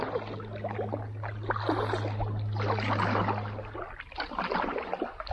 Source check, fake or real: real